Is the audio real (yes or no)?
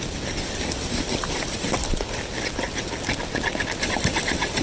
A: yes